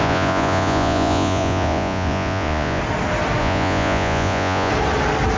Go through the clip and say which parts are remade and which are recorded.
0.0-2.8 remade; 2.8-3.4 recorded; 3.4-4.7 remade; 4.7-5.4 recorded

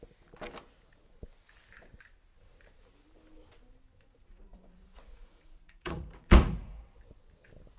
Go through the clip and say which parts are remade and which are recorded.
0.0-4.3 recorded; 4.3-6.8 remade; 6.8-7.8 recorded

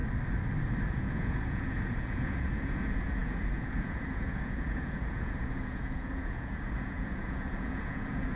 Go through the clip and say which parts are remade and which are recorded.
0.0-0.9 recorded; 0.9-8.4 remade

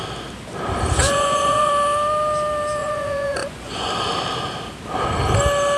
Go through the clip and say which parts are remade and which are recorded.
0.0-1.0 recorded; 1.0-1.7 remade; 1.7-2.8 recorded; 2.8-3.9 remade; 3.9-5.8 recorded

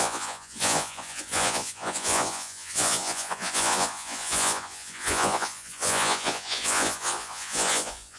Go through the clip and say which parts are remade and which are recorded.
0.0-8.2 remade

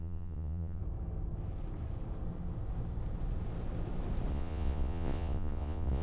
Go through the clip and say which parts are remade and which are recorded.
0.0-0.8 remade; 0.8-4.3 recorded; 4.3-6.0 remade